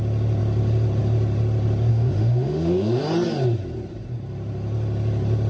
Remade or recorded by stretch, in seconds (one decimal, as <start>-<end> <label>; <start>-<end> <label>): 0.0-1.9 recorded; 1.9-3.0 remade; 3.0-5.5 recorded